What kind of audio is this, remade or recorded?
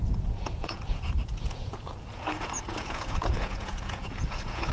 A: remade